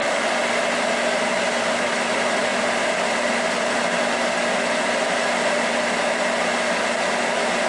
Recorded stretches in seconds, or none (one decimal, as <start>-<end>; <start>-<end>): 0.0-7.7